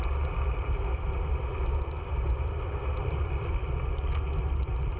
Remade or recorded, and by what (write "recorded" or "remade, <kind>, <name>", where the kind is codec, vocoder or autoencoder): recorded